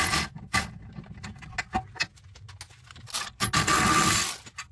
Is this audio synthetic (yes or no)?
no